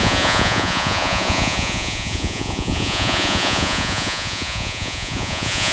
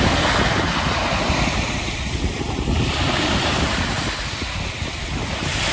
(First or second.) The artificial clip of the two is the first